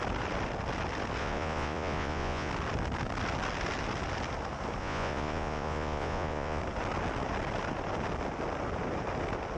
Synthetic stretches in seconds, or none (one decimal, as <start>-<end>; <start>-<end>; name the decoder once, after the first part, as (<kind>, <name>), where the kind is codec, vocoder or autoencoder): 1.2-2.5 (vocoder, Vocos); 4.8-6.6